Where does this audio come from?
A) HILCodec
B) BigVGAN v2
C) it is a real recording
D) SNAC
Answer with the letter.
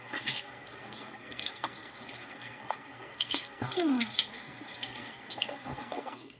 D